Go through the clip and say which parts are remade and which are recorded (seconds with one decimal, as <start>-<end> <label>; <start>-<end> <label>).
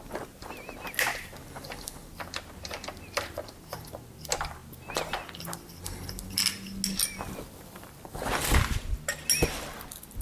0.0-10.2 recorded